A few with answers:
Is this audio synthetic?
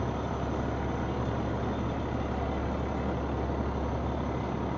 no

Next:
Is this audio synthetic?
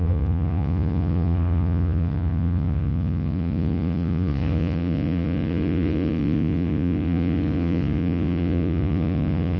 yes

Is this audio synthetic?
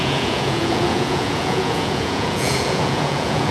yes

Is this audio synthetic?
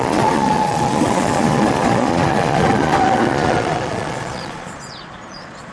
yes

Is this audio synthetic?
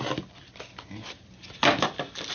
no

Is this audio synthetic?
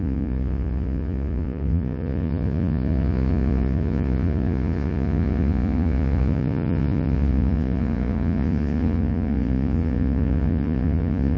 yes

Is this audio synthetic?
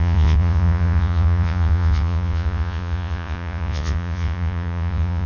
yes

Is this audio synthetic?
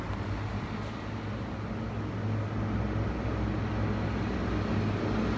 no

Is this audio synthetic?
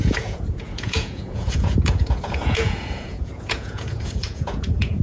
yes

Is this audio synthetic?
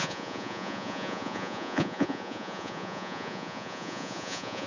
yes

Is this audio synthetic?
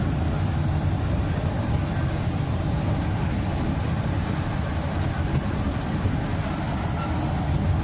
no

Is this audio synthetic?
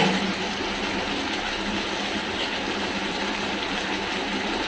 no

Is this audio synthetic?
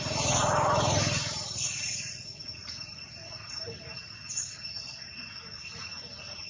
no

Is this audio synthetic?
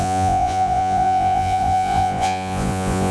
yes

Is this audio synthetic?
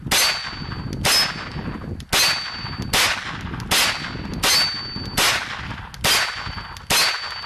no